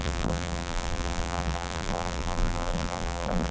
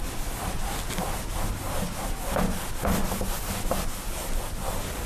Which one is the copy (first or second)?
first